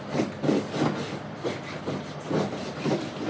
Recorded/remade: recorded